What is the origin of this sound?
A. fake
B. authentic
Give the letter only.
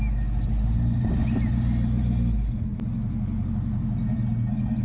B